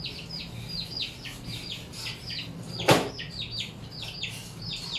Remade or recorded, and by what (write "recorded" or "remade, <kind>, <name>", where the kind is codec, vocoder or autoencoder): recorded